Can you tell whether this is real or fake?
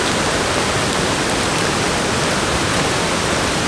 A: real